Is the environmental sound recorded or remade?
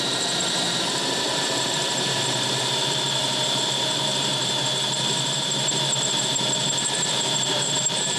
remade